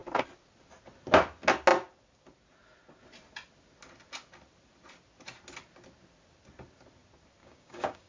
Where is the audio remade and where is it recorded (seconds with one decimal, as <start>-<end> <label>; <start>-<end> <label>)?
0.0-7.4 recorded; 7.4-8.1 remade